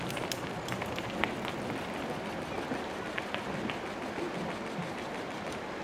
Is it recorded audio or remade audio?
recorded